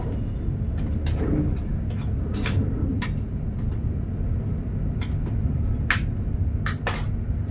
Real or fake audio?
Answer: real